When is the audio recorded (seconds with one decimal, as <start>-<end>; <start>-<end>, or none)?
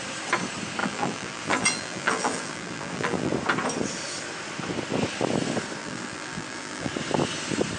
0.0-0.8; 3.3-5.8; 6.9-7.8